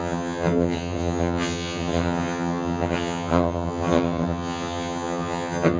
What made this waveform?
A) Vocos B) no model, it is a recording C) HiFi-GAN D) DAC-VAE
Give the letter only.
C